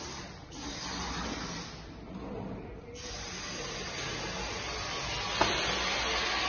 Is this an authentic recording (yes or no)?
yes